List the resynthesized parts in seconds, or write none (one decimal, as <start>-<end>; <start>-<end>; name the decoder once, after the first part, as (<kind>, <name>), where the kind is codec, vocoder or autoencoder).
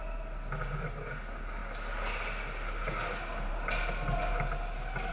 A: none